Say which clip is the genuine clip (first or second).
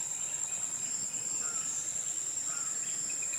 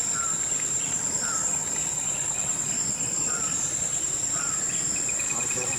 first